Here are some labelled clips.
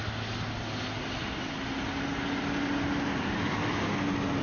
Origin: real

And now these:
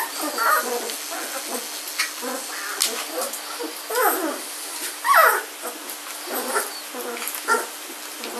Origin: real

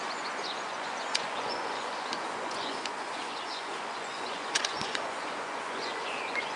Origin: fake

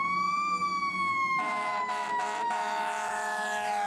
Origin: fake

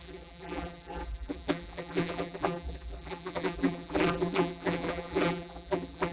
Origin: fake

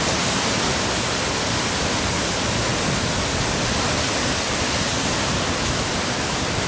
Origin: real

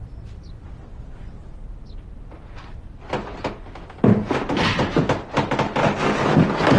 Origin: real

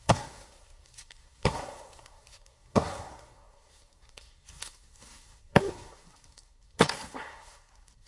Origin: fake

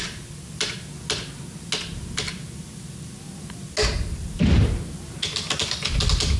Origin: real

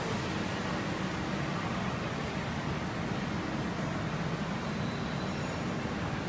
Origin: real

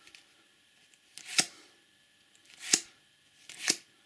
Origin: real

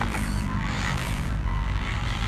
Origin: fake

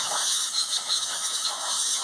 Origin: fake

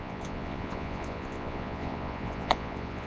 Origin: fake